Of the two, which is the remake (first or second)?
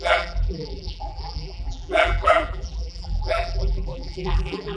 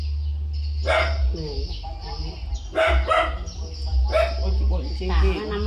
first